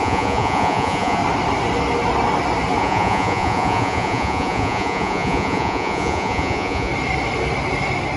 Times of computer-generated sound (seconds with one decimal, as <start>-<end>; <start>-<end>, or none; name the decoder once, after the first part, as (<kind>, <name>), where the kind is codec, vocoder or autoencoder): 0.0-1.2 (vocoder, Vocos); 2.8-6.9